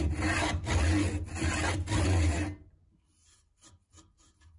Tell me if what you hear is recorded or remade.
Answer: recorded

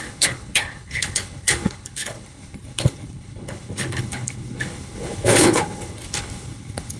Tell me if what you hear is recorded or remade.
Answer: remade